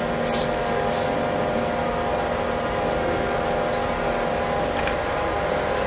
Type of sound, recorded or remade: recorded